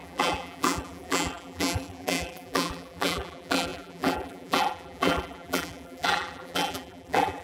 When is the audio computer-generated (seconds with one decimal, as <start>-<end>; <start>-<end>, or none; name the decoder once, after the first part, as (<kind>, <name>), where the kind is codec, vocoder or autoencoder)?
0.0-7.4 (vocoder, BigVGAN v2)